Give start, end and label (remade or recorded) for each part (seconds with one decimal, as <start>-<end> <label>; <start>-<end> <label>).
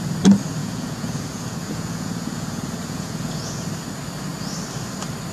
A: 0.0-0.6 recorded; 0.6-3.6 remade; 3.6-5.3 recorded